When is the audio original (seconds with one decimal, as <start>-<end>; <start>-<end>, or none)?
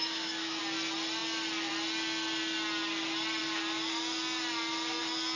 0.6-5.4